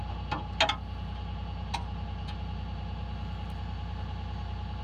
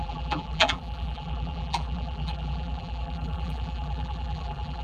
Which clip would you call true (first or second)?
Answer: first